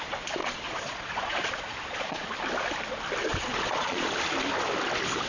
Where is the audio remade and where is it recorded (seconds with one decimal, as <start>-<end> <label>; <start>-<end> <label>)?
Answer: 0.0-0.4 recorded; 0.4-2.3 remade; 2.3-3.3 recorded; 3.3-4.1 remade; 4.1-5.3 recorded